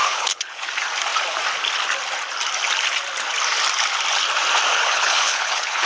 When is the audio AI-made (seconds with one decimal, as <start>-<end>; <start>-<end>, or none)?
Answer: 0.0-0.7; 4.7-5.9